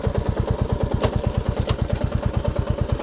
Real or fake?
real